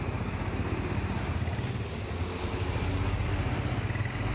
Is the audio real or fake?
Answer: real